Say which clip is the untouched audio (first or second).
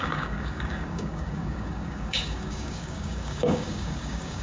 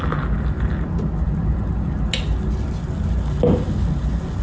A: second